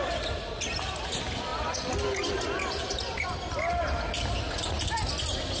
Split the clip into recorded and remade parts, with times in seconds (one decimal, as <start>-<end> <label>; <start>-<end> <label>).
0.0-5.6 recorded